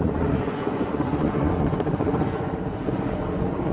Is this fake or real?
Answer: fake